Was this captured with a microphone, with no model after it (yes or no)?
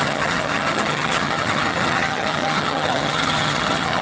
no